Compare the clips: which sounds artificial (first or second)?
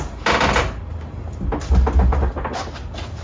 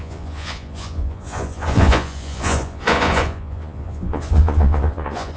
second